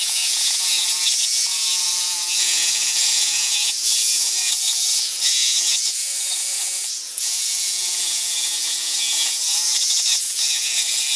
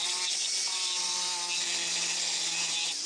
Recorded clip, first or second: second